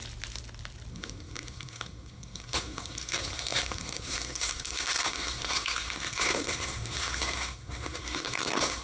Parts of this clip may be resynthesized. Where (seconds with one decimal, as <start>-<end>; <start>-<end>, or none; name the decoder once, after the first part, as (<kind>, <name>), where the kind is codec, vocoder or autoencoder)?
0.9-8.8 (codec, SNAC)